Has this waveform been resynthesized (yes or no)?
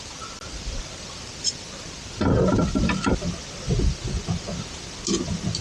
no